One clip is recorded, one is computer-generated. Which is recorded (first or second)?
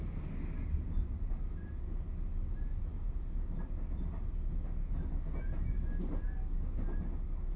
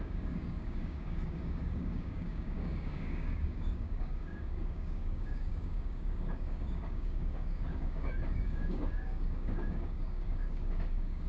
first